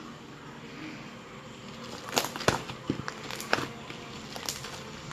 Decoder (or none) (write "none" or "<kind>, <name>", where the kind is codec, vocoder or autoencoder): none